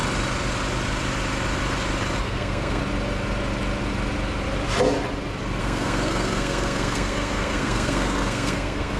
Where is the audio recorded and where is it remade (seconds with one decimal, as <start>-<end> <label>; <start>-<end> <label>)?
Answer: 0.0-2.2 recorded; 2.2-2.8 remade; 2.8-5.6 recorded; 5.6-9.0 remade